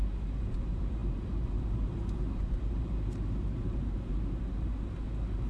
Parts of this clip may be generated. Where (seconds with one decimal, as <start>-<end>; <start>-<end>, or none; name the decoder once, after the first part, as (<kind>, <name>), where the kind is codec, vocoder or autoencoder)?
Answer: 0.0-5.5 (vocoder, BigVGAN v2)